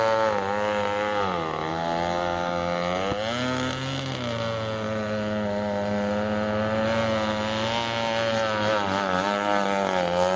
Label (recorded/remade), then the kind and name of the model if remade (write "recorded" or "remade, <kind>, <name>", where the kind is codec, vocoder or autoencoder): recorded